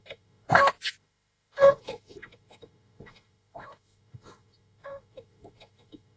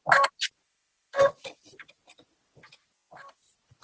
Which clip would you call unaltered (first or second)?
second